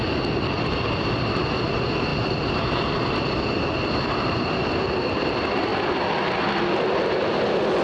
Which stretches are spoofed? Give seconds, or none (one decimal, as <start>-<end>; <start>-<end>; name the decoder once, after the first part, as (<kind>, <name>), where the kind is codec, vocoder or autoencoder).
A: none

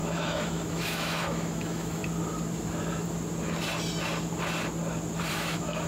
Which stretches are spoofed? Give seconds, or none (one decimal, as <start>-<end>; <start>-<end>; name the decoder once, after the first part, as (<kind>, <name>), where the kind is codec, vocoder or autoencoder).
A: 0.0-2.0 (autoencoder, DAC-VAE); 5.3-5.9

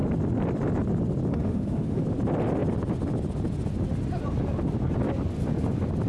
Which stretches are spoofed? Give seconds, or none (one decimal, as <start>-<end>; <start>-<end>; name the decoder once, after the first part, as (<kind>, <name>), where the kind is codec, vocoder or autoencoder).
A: 1.3-2.0 (autoencoder, DAC-VAE)

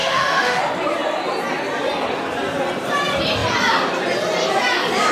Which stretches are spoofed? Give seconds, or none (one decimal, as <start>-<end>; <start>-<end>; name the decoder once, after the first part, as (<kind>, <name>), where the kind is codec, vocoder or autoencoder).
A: 0.0-0.6 (autoencoder, DAC-VAE)